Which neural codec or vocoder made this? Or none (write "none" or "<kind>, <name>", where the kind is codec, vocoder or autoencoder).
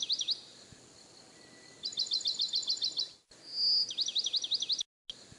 none